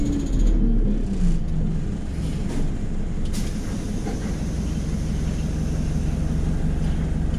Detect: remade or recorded recorded